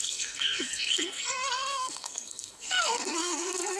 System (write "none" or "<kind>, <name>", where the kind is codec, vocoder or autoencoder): codec, SNAC